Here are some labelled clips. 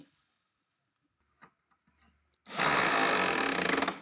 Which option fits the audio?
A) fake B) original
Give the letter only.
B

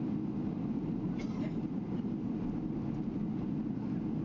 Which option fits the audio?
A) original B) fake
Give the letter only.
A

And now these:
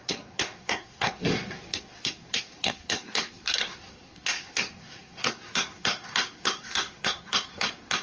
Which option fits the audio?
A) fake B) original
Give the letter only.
A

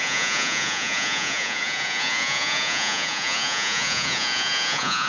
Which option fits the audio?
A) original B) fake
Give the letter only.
B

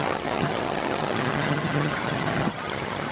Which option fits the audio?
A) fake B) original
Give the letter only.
A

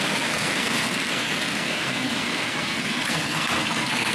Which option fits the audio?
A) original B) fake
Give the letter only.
B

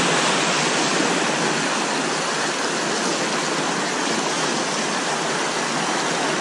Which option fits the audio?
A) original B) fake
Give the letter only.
A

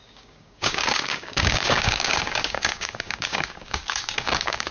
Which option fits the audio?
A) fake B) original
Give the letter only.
A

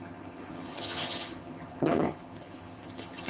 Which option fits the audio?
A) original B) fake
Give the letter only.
B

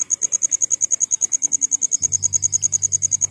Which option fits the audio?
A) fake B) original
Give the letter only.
B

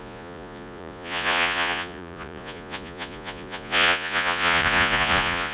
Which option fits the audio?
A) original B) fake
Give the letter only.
B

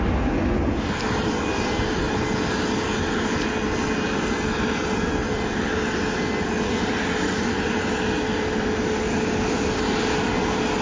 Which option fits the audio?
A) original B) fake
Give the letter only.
A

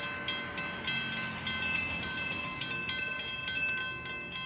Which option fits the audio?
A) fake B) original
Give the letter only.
B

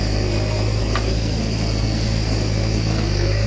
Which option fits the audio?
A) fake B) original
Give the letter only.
A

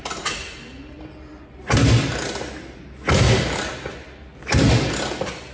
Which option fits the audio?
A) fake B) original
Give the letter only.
B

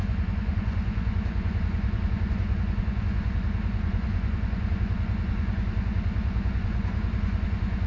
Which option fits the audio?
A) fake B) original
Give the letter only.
A